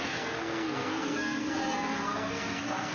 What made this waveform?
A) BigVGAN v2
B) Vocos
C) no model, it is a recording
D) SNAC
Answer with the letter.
D